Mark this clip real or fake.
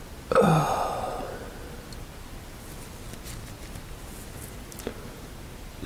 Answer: real